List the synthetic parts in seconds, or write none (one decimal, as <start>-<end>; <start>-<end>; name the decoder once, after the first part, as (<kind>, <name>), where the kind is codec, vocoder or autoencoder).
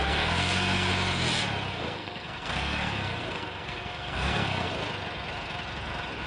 0.0-0.9 (codec, SNAC); 1.7-4.7